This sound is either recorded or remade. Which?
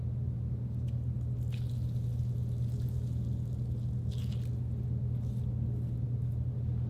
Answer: recorded